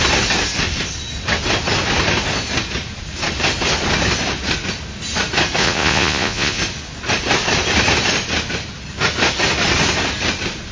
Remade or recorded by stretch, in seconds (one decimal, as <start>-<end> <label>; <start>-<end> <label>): 0.0-5.6 recorded; 5.6-6.6 remade; 6.6-10.7 recorded